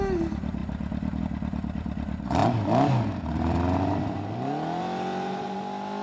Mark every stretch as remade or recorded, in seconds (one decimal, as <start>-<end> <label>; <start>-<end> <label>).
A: 0.0-6.0 recorded